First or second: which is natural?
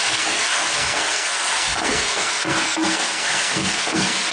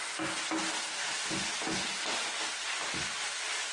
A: second